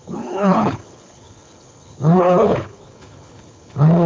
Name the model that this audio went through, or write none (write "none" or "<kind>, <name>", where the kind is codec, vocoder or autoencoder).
codec, HILCodec